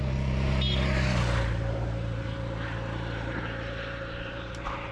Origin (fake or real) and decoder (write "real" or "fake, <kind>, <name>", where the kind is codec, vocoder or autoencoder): fake, vocoder, BigVGAN v2